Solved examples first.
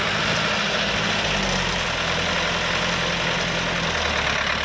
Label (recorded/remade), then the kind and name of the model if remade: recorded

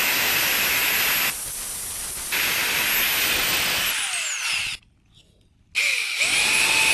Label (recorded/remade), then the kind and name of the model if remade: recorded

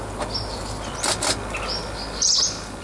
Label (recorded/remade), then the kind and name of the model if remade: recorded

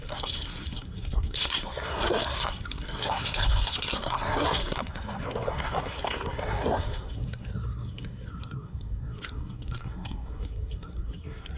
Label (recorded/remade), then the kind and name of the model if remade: remade, codec, SNAC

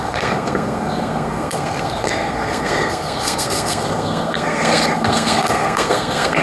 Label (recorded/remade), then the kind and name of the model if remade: remade, codec, SNAC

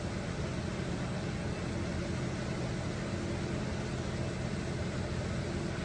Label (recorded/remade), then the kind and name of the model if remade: recorded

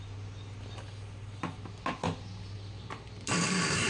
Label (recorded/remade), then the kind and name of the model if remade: recorded